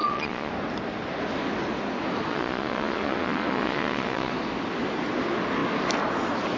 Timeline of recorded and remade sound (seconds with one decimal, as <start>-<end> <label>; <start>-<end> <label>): 0.0-0.5 remade; 0.5-2.3 recorded; 2.3-4.3 remade; 4.3-6.6 recorded